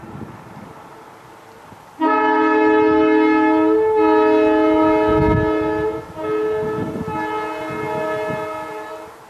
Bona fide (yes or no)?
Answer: yes